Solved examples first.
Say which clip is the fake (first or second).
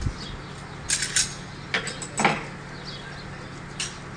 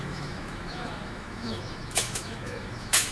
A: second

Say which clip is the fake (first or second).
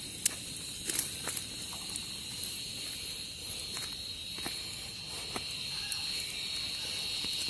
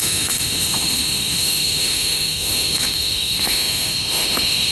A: second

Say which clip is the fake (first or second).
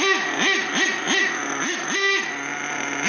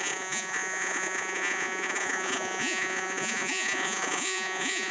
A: second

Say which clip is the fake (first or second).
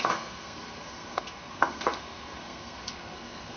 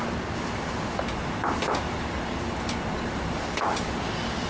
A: first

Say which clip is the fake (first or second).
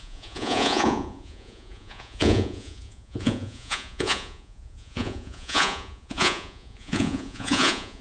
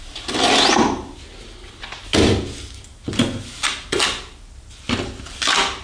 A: first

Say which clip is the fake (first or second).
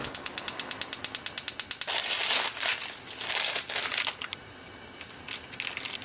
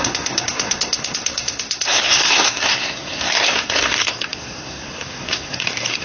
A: second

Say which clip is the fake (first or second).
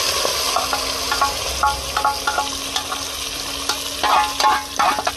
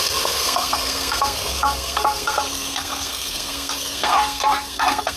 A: second